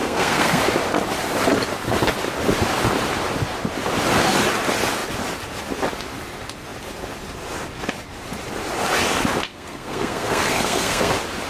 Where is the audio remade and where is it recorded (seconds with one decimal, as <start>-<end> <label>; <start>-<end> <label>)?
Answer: 0.0-0.6 remade; 0.6-9.5 recorded; 9.5-11.1 remade; 11.1-11.5 recorded